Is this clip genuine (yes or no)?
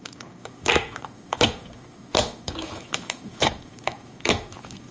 no